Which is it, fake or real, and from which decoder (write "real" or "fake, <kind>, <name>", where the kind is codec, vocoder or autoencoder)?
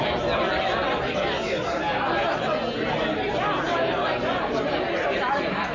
real